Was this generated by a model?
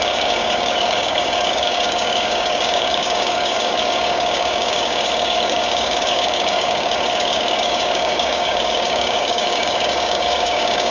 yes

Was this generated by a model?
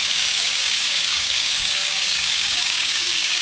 yes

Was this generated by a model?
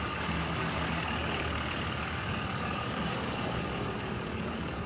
yes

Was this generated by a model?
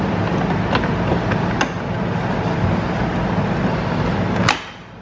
no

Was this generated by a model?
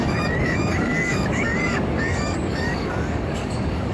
yes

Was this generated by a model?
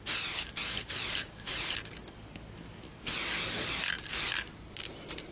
no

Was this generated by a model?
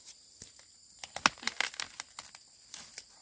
no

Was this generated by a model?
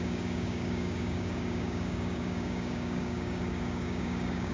yes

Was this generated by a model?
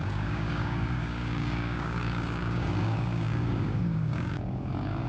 yes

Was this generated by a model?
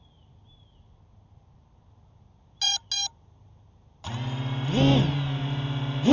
no